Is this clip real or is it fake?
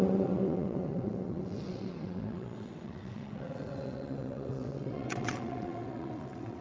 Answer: fake